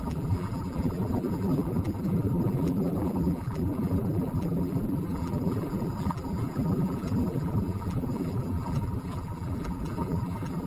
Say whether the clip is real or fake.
fake